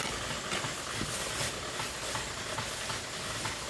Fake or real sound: real